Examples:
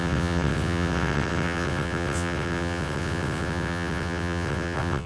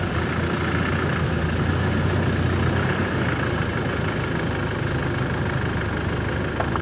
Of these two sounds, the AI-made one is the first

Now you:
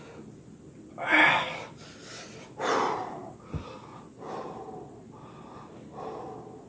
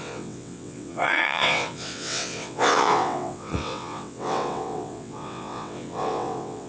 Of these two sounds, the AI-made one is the second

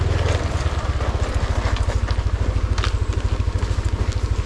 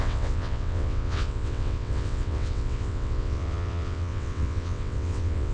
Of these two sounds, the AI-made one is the second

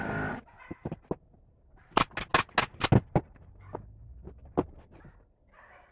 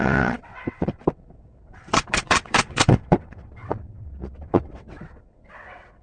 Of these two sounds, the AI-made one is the second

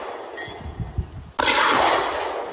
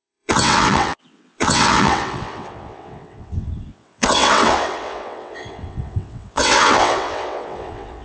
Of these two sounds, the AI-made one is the second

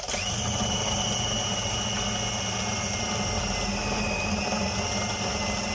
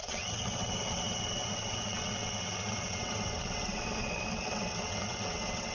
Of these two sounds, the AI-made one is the second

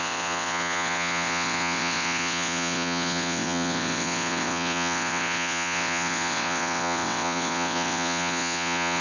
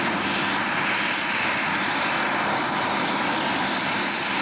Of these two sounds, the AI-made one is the first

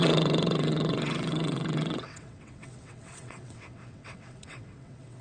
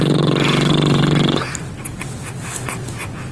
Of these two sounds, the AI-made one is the first